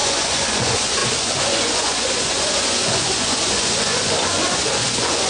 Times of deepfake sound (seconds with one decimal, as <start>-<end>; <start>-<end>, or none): 0.0-5.3